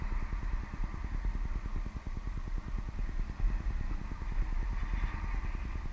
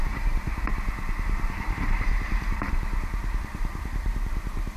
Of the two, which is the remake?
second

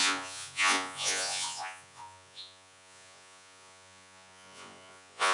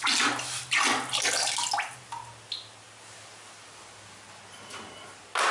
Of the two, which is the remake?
first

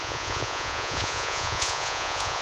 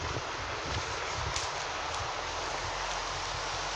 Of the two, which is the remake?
first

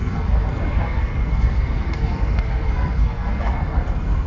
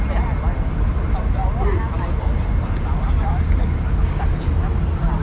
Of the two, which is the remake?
first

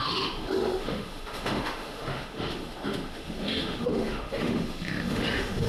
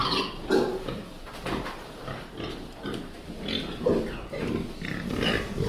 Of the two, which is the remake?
first